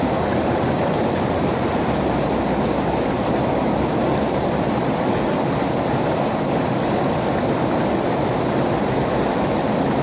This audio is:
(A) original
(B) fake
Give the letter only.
A